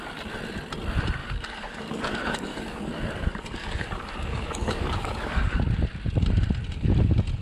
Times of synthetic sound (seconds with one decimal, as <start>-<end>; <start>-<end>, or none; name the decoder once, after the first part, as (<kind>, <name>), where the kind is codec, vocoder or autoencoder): 1.2-5.6 (codec, DAC)